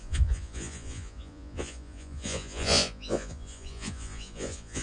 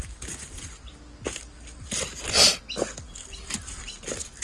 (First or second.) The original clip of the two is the second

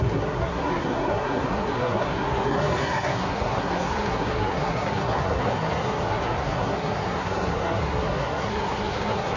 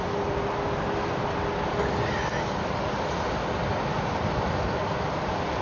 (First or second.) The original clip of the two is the second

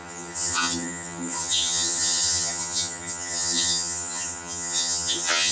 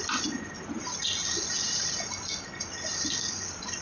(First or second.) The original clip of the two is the second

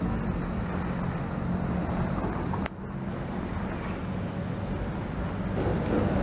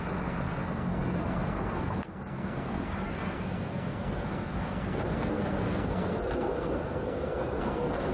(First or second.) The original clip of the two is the first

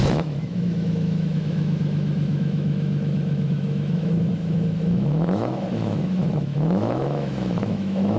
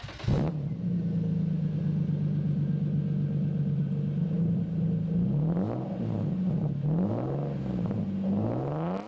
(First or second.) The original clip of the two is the second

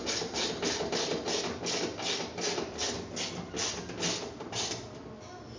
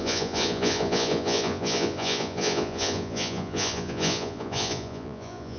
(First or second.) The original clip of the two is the first